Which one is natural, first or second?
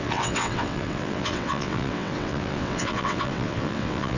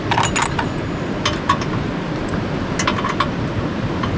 second